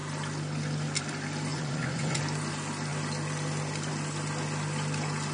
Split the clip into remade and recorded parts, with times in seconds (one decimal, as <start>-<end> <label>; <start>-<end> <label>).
0.0-1.5 recorded; 1.5-2.2 remade; 2.2-5.3 recorded